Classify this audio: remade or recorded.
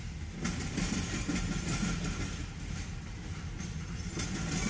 recorded